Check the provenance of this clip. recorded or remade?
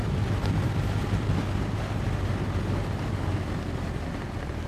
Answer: remade